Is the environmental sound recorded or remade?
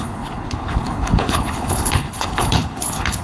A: remade